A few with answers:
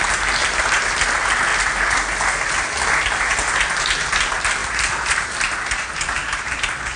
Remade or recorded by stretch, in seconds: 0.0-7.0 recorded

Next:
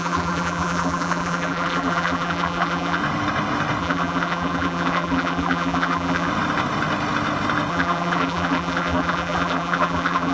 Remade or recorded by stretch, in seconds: 0.0-3.0 remade; 3.0-3.8 recorded; 3.8-6.3 remade; 6.3-7.7 recorded; 7.7-10.3 remade

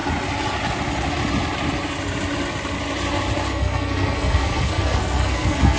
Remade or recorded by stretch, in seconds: 0.0-3.5 recorded; 3.5-5.8 remade